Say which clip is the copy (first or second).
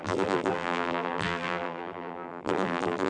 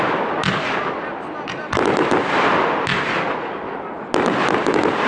first